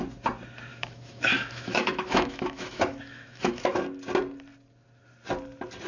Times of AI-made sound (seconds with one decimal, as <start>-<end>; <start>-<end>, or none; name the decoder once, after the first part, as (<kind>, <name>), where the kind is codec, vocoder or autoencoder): 0.7-3.8 (autoencoder, DAC-VAE)